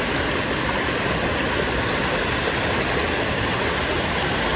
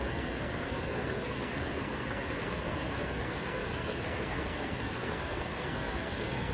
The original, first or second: first